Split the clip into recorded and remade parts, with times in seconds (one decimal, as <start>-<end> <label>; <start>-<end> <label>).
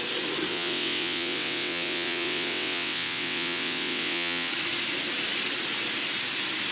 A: 0.0-0.5 recorded; 0.5-4.5 remade; 4.5-6.7 recorded